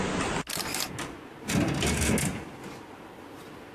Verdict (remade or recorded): recorded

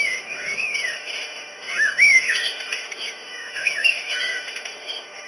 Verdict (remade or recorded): remade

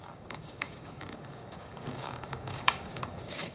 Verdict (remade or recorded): remade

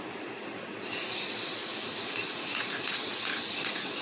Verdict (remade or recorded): remade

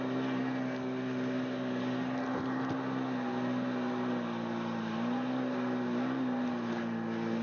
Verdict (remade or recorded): recorded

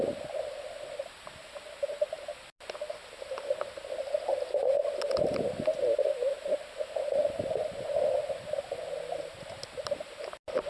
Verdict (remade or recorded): recorded